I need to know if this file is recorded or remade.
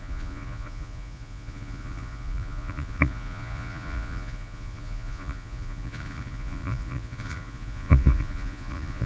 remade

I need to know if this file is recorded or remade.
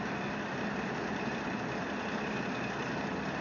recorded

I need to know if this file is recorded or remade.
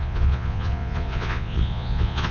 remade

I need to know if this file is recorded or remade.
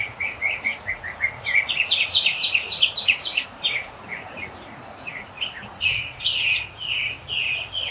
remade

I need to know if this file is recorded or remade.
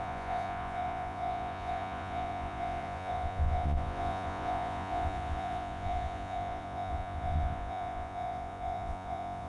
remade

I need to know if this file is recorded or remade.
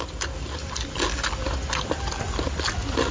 recorded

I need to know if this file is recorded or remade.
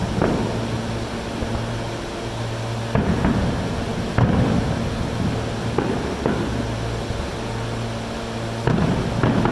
recorded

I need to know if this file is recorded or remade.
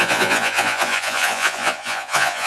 remade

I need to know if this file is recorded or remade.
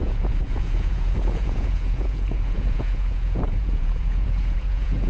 remade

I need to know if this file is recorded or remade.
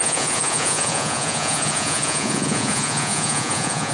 remade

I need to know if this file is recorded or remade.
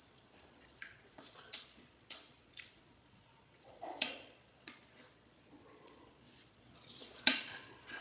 remade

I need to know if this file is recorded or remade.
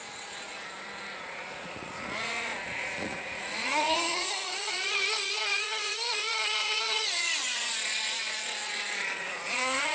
remade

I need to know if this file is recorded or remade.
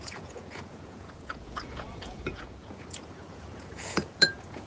remade